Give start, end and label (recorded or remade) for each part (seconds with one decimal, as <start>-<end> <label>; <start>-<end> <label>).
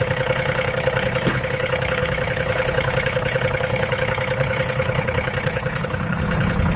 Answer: 0.0-6.8 remade